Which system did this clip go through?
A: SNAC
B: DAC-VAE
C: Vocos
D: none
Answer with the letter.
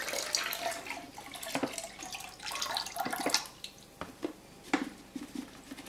D